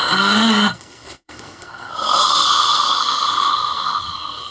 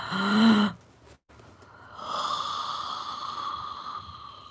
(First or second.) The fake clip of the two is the first